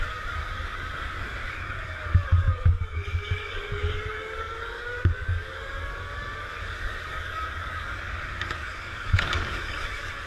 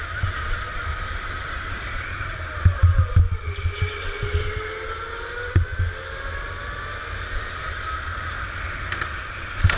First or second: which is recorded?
second